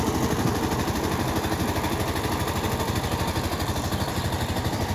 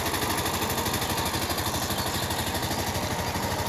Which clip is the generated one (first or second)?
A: first